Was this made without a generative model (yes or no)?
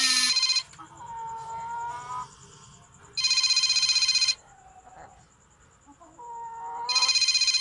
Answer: yes